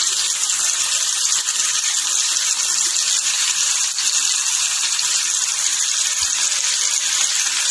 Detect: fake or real real